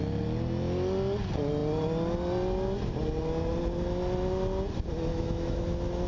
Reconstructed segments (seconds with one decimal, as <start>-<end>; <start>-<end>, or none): 5.1-6.1